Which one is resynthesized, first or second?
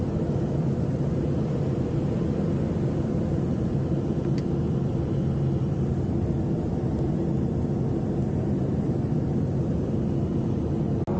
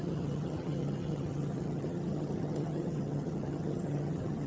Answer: second